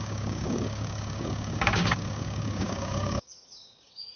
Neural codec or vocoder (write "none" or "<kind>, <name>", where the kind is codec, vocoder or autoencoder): codec, DAC